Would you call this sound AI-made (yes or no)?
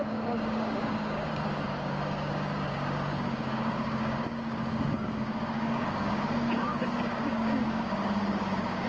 yes